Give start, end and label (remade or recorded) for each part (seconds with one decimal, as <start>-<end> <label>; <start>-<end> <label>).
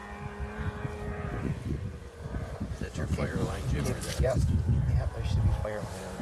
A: 0.0-1.4 recorded; 1.4-5.1 remade; 5.1-5.6 recorded; 5.6-6.2 remade